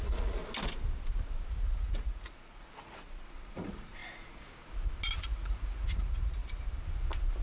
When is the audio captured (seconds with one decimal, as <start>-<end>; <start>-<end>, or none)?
0.4-1.5; 4.0-5.2; 6.4-7.4